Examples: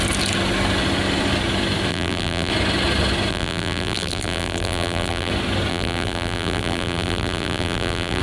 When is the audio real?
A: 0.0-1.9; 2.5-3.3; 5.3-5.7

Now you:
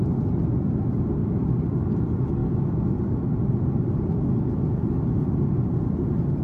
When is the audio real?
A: 0.0-1.2; 2.0-6.4

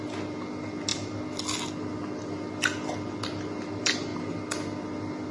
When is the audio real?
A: 0.0-5.3

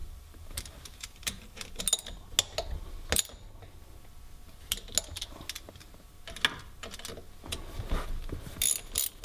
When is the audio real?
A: 1.8-9.2

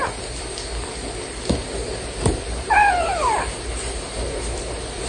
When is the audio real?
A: 0.0-1.8

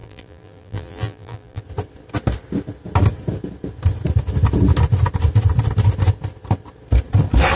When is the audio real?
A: 1.6-7.6